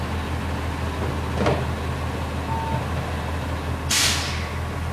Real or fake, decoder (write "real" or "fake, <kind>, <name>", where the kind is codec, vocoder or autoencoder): real